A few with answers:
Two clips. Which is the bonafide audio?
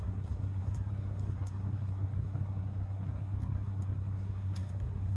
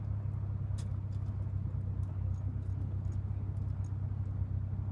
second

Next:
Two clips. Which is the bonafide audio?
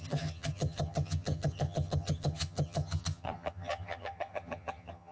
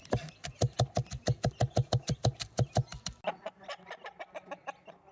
second